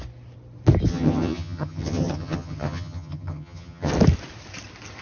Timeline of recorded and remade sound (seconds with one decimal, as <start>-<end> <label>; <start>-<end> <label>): 0.0-0.9 recorded; 0.9-3.9 remade; 3.9-5.0 recorded

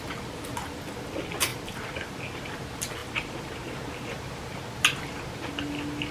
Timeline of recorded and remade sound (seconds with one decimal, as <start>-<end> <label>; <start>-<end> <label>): 0.0-6.1 recorded

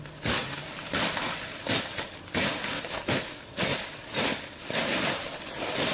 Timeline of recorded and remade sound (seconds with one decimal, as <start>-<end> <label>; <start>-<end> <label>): 0.0-5.9 recorded

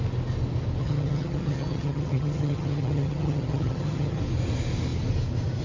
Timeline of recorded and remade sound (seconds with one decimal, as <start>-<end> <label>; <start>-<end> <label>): 0.0-0.8 recorded; 0.8-4.2 remade; 4.2-5.6 recorded

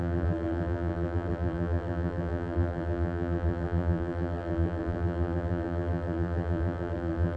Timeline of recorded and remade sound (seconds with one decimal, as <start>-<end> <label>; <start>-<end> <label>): 0.0-7.4 remade